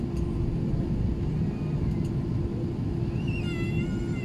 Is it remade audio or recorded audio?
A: recorded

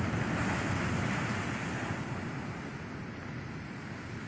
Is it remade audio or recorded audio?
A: recorded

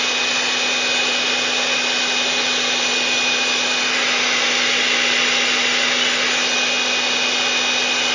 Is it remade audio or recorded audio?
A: recorded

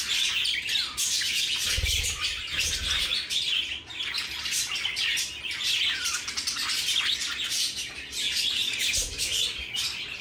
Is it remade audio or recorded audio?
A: remade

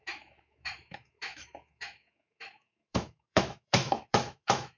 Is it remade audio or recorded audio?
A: remade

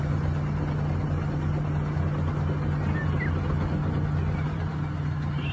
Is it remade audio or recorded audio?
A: recorded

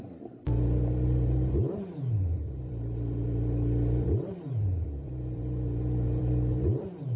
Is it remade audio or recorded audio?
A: remade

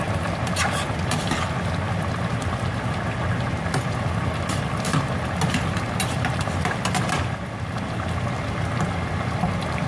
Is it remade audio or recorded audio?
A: recorded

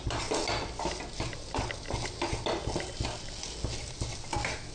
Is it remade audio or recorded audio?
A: recorded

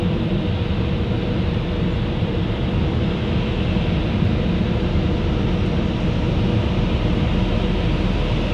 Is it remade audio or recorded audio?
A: recorded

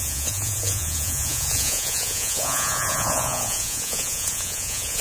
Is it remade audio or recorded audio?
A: remade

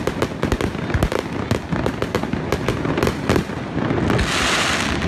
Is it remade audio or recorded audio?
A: recorded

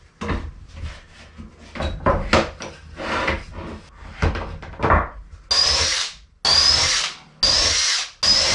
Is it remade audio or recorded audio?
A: recorded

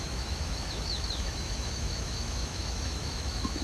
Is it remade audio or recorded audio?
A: remade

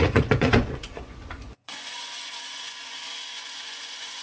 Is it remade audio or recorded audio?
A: remade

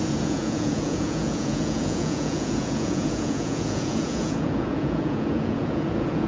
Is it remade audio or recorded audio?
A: remade